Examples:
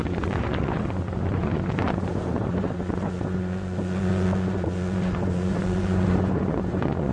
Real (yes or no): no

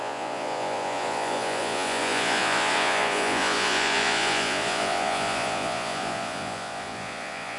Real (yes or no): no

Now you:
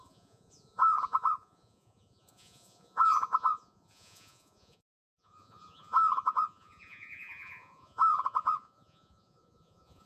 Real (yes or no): no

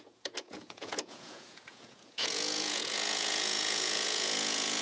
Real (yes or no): no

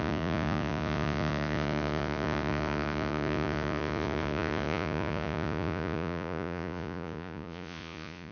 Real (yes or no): no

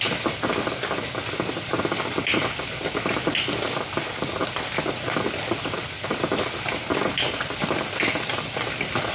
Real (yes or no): yes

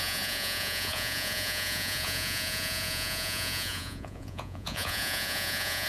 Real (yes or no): no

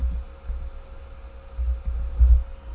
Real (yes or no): yes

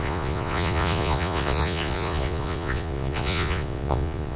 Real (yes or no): no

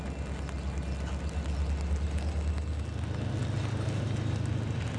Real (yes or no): yes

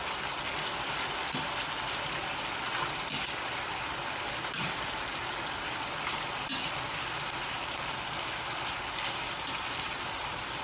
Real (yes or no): yes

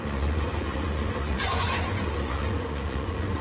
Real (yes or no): no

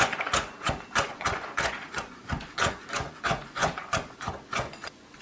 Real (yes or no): no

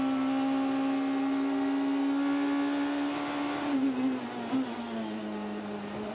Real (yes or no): yes